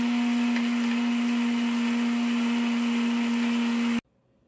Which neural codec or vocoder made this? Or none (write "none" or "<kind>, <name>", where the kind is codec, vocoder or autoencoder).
none